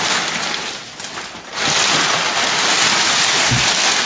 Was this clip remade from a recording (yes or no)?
no